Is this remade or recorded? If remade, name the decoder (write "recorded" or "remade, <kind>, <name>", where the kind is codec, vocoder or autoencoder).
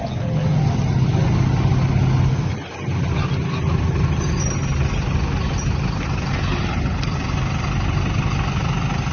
recorded